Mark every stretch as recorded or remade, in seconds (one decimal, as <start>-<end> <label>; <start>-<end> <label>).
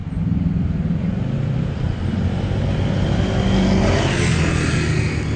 0.0-5.4 recorded